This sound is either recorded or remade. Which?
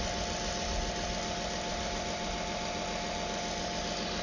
recorded